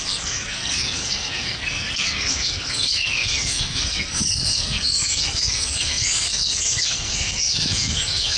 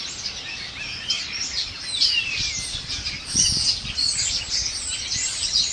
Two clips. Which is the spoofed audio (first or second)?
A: first